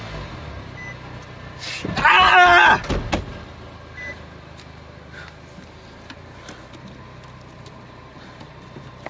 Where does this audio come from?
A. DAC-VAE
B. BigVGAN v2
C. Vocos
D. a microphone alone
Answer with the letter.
D